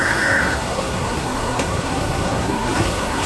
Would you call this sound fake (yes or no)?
yes